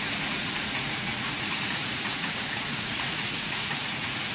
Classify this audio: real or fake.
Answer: fake